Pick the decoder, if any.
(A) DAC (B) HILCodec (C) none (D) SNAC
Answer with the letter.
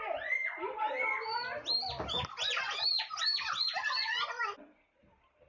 C